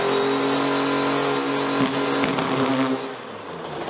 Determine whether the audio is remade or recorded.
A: recorded